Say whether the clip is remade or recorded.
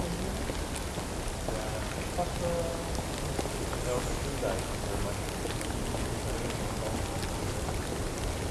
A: recorded